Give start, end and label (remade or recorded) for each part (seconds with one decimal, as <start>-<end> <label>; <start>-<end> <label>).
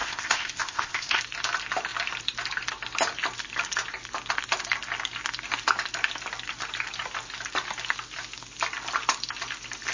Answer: 0.0-1.2 remade; 1.2-9.9 recorded